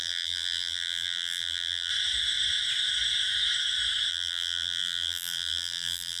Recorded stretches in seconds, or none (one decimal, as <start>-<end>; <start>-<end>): 1.9-4.1